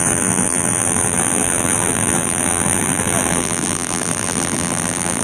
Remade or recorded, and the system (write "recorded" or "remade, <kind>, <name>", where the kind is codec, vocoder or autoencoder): remade, vocoder, BigVGAN v2